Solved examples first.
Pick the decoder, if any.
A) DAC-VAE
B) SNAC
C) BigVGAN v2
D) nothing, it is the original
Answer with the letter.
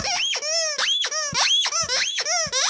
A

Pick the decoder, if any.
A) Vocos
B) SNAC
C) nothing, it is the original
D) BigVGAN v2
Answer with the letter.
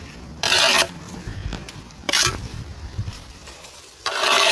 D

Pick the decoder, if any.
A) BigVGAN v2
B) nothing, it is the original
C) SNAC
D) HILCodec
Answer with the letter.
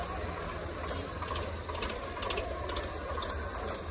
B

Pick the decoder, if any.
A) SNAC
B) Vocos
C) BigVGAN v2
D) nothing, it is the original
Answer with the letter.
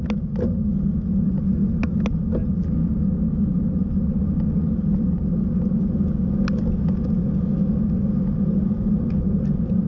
D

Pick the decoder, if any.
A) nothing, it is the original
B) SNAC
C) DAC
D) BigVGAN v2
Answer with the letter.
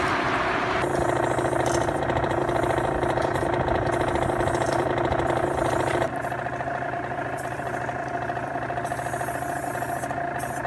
A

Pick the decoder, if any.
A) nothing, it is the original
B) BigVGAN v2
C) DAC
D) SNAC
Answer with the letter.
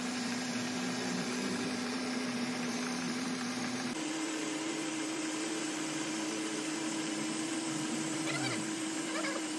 B